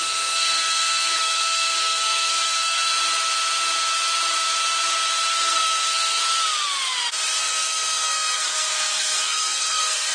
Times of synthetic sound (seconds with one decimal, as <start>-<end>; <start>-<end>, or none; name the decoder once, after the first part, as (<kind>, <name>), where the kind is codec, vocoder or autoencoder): 0.0-2.9 (codec, SNAC); 5.3-6.2; 7.4-10.1